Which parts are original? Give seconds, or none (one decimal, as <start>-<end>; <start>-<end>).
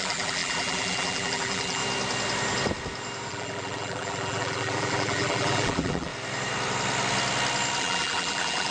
1.8-3.3; 6.1-7.8